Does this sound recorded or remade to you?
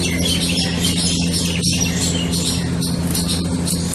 recorded